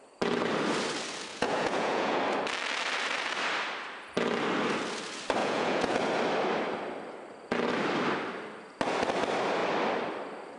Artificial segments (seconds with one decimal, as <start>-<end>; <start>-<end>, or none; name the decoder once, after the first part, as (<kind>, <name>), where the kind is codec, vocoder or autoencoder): 1.3-2.2 (vocoder, Vocos); 5.4-6.0